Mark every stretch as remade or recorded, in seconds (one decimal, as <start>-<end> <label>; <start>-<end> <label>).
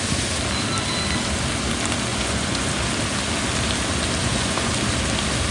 0.0-2.1 recorded; 2.1-2.7 remade; 2.7-4.2 recorded; 4.2-4.7 remade; 4.7-5.5 recorded